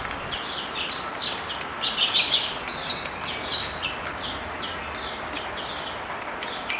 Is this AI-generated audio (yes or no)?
no